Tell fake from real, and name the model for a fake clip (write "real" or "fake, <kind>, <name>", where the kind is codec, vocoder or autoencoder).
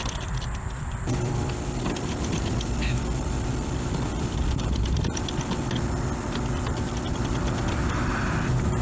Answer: fake, vocoder, BigVGAN v2